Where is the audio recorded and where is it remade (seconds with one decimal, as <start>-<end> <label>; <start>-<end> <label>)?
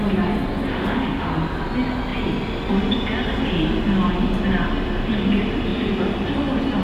0.0-0.7 recorded; 0.7-1.3 remade; 1.3-6.8 recorded